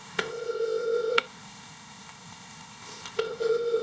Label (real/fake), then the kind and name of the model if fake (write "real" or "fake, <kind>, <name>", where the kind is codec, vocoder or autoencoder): fake, codec, ZipCodec